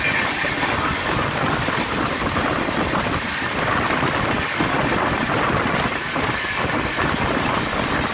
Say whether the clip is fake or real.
real